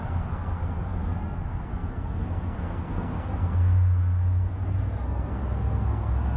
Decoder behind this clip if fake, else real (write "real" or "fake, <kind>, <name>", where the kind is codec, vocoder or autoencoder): fake, codec, SNAC